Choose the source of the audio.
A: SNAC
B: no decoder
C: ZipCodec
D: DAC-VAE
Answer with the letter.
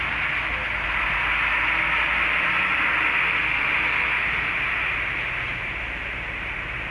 B